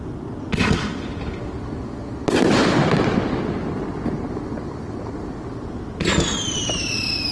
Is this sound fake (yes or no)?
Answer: no